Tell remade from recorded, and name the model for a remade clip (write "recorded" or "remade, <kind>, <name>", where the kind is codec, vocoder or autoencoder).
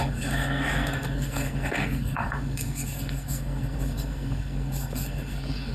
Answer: remade, codec, SNAC